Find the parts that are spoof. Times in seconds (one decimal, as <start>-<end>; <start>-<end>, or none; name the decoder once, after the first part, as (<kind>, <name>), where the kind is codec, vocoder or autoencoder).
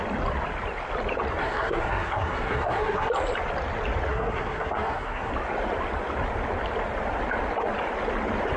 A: 1.4-3.1 (codec, SNAC); 4.1-5.3